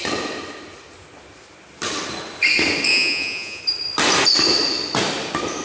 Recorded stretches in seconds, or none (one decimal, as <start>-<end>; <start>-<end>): 0.0-2.9; 3.6-5.6